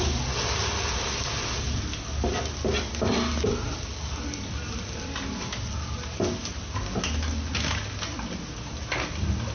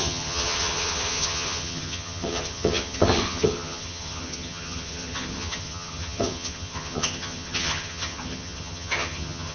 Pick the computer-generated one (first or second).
second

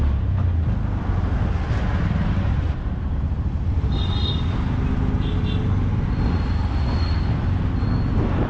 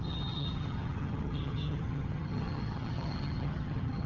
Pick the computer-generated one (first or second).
second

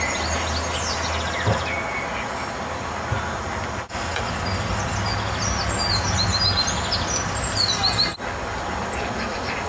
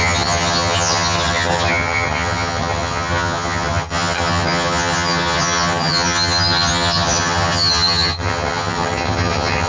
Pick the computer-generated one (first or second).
second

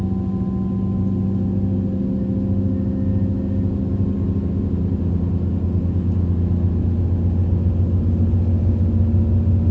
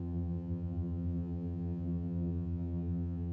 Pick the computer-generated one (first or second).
second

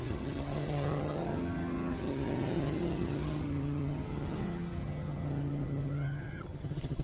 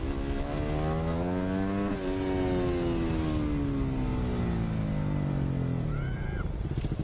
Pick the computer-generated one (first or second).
first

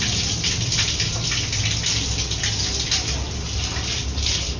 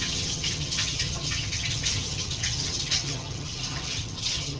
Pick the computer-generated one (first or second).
second